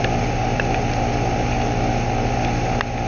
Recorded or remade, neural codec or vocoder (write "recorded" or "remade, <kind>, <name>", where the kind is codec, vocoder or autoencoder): recorded